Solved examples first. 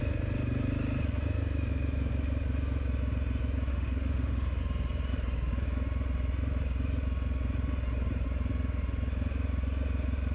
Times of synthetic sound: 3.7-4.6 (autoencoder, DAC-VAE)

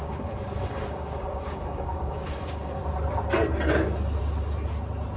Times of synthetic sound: 0.0-2.8 (codec, DAC)

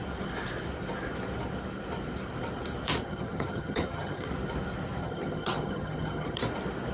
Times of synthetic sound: 3.0-4.3 (vocoder, HiFi-GAN); 5.0-6.4

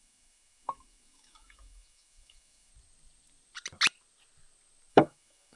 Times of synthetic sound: 0.0-2.7 (autoencoder, DAC-VAE); 4.9-5.6

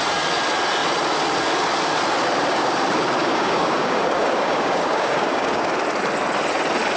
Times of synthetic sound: 3.2-5.7 (codec, DAC)

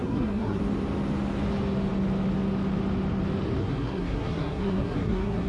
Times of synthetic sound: 0.0-0.6 (codec, SNAC); 3.6-5.5